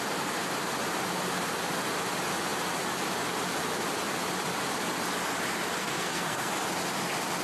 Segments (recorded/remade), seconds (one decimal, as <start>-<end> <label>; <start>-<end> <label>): 0.0-5.8 recorded; 5.8-6.5 remade; 6.5-7.4 recorded